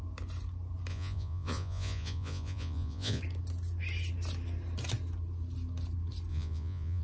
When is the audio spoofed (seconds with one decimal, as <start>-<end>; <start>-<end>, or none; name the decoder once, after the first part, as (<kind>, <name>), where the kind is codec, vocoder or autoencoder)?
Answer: 0.9-3.2 (vocoder, Vocos); 6.3-7.0